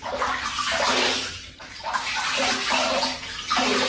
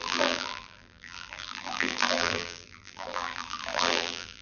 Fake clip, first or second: second